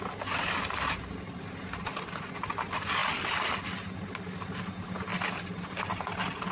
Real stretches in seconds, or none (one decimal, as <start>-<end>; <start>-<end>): 0.0-6.5